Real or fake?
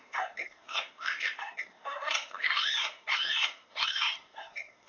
fake